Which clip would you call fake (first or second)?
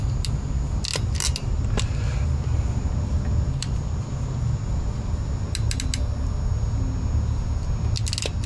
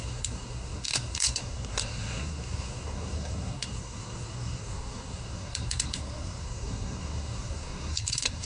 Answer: second